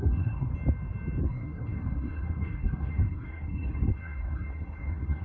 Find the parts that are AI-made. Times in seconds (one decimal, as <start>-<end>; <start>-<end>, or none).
0.0-0.5; 1.2-5.2